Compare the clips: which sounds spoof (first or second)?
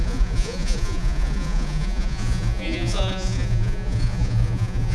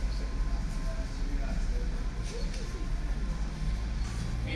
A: first